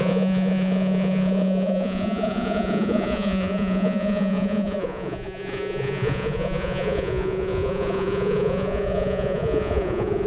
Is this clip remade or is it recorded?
remade